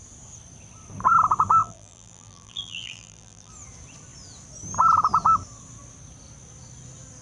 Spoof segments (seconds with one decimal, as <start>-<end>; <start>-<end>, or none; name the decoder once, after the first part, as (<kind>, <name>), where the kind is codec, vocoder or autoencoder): 1.6-3.5 (vocoder, BigVGAN v2)